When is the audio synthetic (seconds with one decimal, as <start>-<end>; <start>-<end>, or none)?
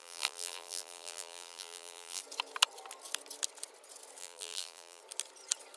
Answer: 0.0-2.2; 4.2-5.0